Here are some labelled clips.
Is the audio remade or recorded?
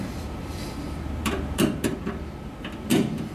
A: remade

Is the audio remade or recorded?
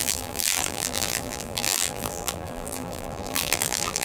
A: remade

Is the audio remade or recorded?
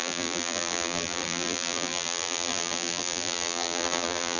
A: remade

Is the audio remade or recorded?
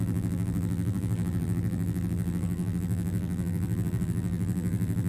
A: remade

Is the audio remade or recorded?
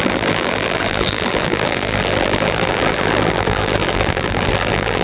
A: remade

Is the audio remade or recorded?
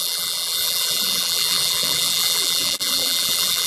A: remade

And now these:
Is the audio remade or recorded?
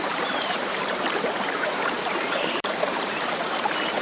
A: remade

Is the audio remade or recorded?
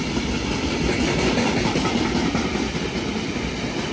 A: remade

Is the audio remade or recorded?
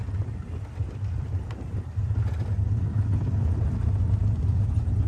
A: recorded